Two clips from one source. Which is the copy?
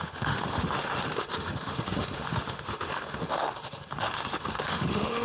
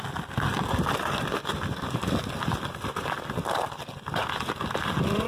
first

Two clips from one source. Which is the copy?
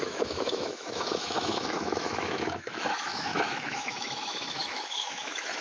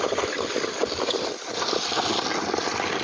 first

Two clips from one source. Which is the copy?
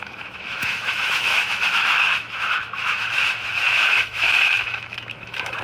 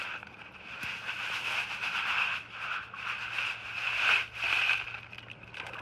first